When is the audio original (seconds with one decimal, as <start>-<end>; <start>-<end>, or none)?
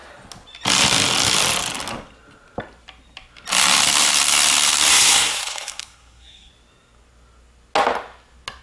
0.0-4.9; 6.5-8.6